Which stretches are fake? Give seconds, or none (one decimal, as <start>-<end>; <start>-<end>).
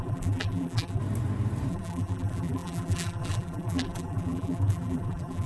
0.0-1.0; 1.7-5.5